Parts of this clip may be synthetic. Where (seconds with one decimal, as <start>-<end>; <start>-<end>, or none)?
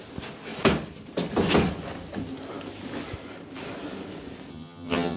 4.5-5.2